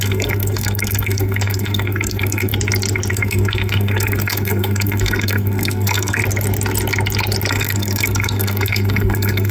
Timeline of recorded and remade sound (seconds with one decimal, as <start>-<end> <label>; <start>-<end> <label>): 0.0-2.5 remade; 2.5-3.1 recorded; 3.1-6.2 remade; 6.2-7.5 recorded; 7.5-9.5 remade